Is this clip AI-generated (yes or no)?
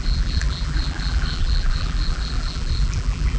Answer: yes